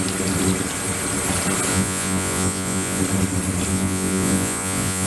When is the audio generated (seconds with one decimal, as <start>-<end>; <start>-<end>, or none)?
1.7-3.0; 3.7-5.1